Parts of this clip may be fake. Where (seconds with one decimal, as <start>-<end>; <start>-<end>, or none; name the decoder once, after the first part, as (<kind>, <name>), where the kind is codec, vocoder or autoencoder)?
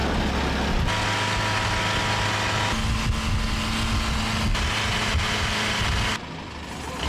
none